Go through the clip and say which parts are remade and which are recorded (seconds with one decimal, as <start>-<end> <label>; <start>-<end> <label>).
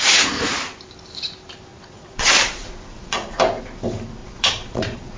0.0-1.7 recorded; 1.7-3.3 remade; 3.3-4.2 recorded; 4.2-5.2 remade